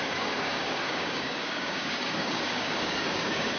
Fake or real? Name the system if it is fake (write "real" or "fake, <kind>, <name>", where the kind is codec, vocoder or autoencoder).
fake, codec, DAC